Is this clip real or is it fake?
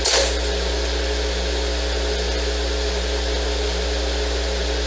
real